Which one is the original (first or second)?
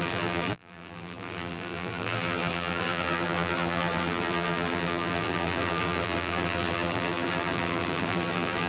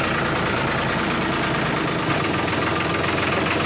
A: second